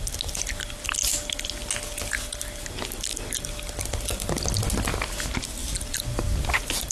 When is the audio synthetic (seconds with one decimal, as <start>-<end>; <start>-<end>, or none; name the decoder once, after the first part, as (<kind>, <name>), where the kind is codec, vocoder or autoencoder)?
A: none

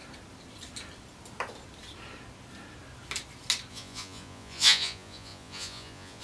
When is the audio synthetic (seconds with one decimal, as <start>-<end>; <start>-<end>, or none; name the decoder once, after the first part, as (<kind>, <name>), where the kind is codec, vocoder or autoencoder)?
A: 3.7-6.2 (vocoder, Vocos)

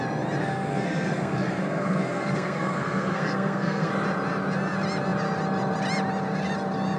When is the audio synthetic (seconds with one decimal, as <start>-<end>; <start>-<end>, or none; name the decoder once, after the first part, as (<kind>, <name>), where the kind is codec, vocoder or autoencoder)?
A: 0.4-3.9 (codec, SNAC)

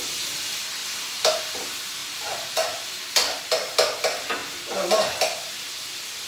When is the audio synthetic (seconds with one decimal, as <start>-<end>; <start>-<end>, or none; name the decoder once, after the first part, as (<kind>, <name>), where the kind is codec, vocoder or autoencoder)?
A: 0.8-1.4 (vocoder, BigVGAN v2); 2.0-3.4

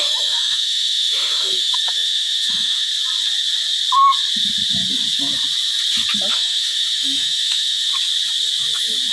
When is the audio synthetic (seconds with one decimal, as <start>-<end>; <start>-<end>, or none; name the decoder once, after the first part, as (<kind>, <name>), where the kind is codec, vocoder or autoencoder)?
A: 0.0-2.9 (autoencoder, DAC-VAE); 6.3-7.9